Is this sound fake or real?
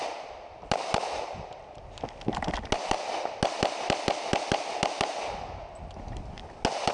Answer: real